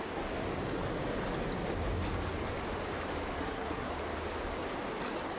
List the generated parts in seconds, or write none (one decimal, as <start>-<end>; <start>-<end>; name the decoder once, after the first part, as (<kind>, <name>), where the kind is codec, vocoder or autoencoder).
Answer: 3.4-3.9 (codec, SNAC)